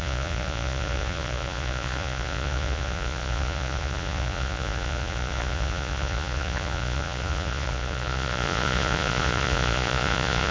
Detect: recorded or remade remade